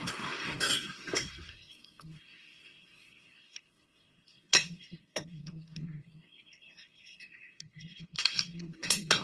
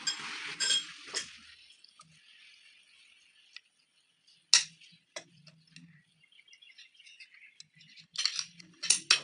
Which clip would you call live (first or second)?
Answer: second